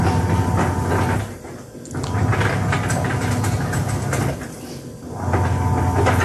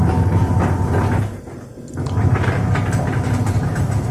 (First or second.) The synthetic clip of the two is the second